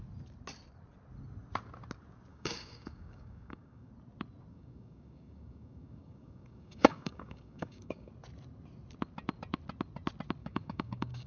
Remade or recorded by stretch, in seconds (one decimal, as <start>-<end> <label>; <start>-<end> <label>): 0.0-2.3 recorded; 2.3-3.9 remade; 3.9-4.5 recorded; 4.5-8.1 remade; 8.1-10.4 recorded; 10.4-11.3 remade